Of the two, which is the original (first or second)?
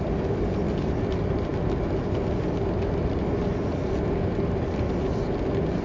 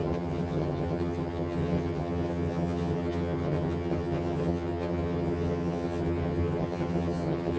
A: first